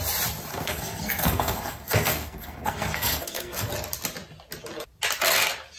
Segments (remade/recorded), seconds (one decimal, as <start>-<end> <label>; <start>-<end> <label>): 0.0-0.5 recorded; 0.5-3.7 remade; 3.7-5.8 recorded